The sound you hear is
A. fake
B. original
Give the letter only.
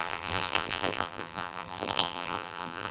A